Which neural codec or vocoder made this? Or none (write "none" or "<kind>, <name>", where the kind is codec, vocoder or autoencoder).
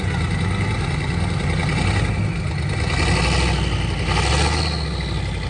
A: none